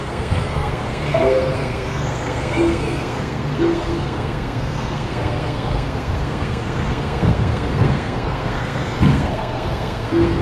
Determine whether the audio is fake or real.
fake